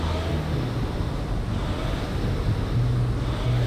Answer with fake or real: real